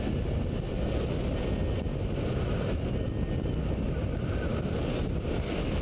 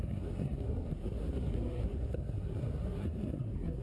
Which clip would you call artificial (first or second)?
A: second